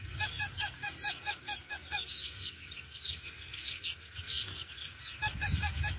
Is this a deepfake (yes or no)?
yes